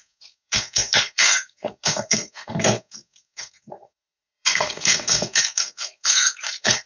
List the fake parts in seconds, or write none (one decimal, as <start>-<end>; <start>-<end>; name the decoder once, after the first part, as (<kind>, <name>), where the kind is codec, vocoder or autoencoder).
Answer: 0.0-6.9 (codec, SNAC)